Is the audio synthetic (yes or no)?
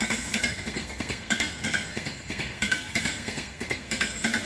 yes